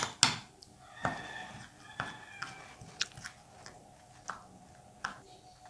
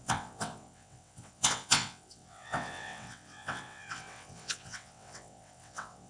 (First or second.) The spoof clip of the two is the second